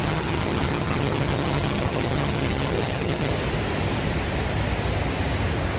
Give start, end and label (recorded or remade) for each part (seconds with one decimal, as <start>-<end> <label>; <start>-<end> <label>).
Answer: 0.0-3.3 remade; 3.3-5.8 recorded